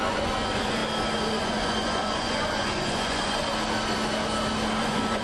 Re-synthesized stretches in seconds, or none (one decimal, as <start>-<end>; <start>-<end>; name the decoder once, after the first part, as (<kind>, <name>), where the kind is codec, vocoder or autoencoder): 0.0-0.8 (vocoder, Vocos); 1.4-3.4; 4.8-5.2